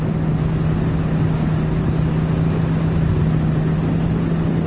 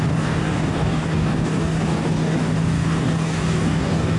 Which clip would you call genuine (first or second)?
first